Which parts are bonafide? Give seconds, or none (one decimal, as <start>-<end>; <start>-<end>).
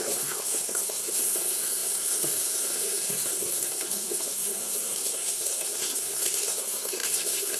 none